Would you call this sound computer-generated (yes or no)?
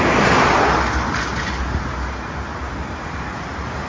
no